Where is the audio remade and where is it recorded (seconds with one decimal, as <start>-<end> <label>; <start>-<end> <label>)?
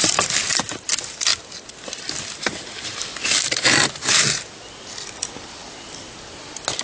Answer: 0.0-6.8 recorded